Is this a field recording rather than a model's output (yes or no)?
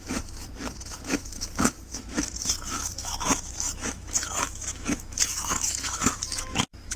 no